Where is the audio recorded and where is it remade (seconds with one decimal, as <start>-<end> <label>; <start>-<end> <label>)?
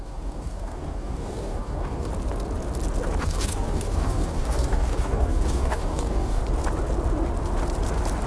0.0-2.1 remade; 2.1-3.2 recorded; 3.2-6.4 remade; 6.4-8.3 recorded